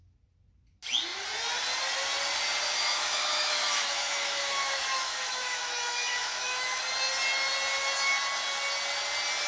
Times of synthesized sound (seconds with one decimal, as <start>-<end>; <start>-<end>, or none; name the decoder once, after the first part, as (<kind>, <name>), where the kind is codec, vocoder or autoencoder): 2.8-6.8 (autoencoder, DAC-VAE)